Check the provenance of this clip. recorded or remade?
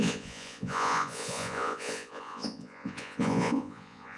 remade